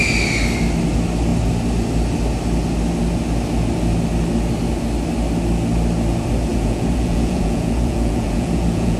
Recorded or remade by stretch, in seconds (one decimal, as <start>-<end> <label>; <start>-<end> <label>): 0.0-6.5 recorded; 6.5-9.0 remade